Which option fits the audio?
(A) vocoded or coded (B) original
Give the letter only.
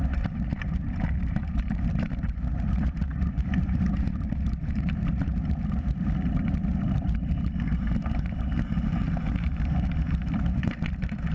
A